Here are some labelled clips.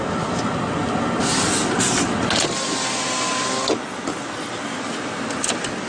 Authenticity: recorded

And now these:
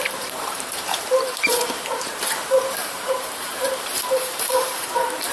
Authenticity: remade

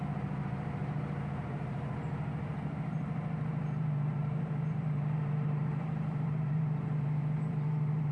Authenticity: remade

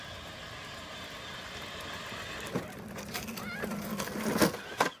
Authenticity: recorded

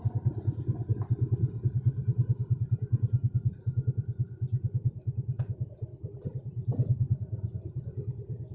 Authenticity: recorded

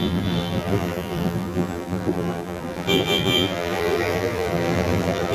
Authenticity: remade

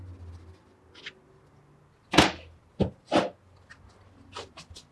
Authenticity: recorded